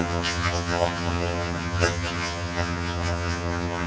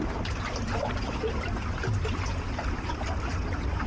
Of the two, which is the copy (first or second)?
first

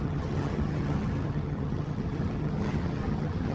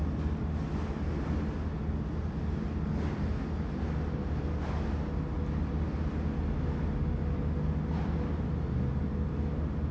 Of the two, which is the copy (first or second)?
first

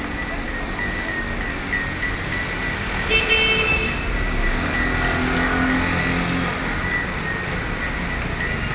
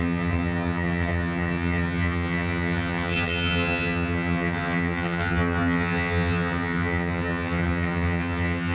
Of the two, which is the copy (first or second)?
second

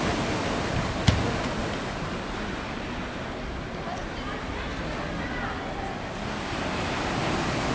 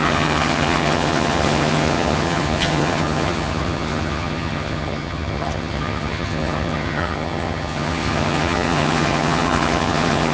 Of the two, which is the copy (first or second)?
second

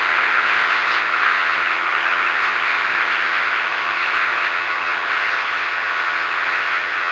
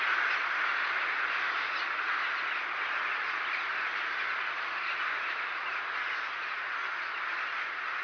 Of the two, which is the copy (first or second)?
first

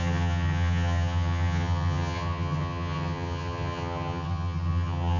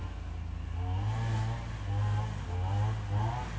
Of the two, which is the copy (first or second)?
first